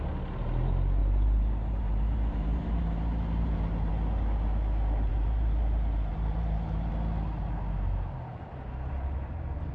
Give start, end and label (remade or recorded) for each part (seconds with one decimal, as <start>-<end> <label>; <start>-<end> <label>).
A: 0.0-1.0 recorded; 1.0-3.9 remade; 3.9-5.1 recorded; 5.1-6.9 remade; 6.9-9.7 recorded